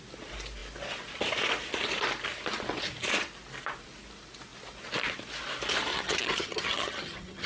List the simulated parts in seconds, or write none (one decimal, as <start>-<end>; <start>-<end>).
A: 5.9-7.5